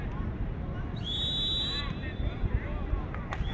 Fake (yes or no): no